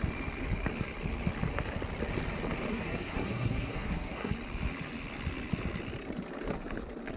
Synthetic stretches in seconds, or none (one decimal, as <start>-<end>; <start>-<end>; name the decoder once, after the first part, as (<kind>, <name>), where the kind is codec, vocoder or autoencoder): 2.7-4.3 (codec, SNAC)